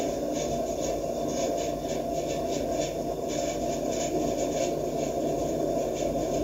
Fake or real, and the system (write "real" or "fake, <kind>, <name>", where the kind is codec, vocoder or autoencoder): real